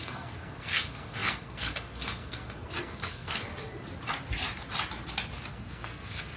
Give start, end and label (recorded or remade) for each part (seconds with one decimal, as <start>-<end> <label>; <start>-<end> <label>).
0.0-3.5 remade; 3.5-5.5 recorded; 5.5-6.4 remade